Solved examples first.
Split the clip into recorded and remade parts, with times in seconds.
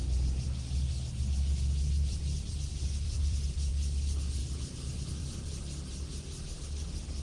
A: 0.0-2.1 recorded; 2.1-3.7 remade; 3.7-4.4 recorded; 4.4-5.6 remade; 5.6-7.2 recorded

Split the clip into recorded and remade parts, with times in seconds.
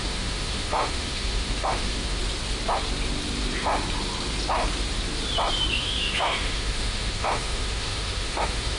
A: 0.0-2.2 remade; 2.2-5.7 recorded; 5.7-8.8 remade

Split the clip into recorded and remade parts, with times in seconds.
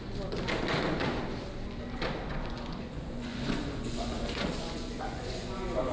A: 0.0-2.3 recorded; 2.3-5.9 remade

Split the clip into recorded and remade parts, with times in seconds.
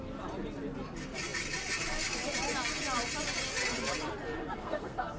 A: 0.0-4.4 recorded; 4.4-5.2 remade